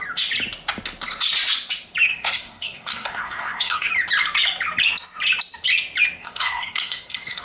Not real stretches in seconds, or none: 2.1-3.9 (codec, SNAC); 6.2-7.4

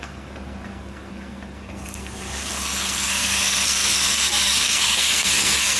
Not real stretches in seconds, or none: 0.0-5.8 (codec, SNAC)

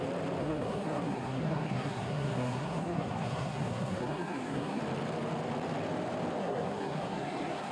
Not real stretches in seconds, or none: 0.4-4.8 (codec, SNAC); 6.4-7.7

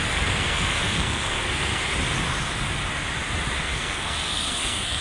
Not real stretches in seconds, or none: 0.0-1.8 (codec, SNAC); 3.6-5.0

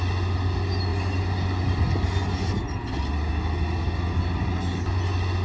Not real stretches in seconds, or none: none

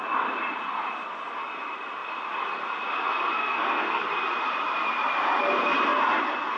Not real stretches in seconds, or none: 3.4-4.0 (codec, SNAC)